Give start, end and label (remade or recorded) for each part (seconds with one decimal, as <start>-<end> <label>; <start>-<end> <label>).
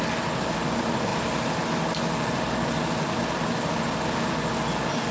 0.0-5.1 recorded